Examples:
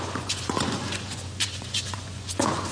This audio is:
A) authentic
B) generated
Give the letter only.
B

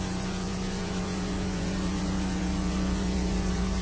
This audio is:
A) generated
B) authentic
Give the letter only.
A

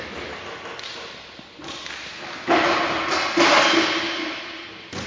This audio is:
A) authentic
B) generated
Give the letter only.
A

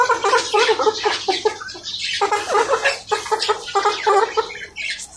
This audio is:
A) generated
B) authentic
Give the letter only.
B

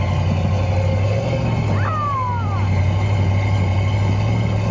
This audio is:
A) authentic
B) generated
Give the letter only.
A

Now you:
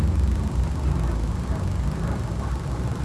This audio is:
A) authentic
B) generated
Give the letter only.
A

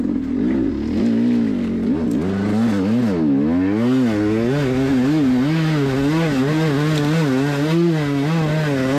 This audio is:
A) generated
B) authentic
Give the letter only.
B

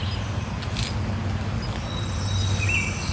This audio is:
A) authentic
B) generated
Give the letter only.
A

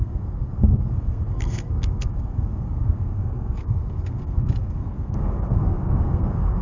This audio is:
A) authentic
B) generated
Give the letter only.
B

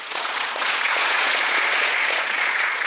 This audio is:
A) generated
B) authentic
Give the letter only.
A